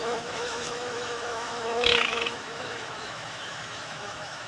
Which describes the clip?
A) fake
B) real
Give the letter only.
A